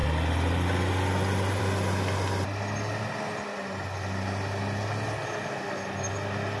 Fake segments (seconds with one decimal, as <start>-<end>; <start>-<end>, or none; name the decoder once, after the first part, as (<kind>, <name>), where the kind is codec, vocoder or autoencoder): none